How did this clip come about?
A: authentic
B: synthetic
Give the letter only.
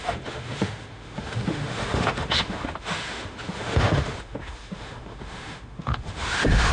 B